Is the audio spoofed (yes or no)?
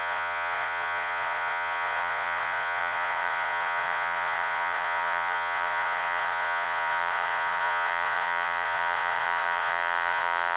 yes